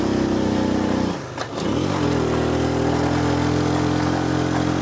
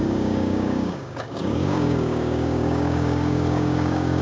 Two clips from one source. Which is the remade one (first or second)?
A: second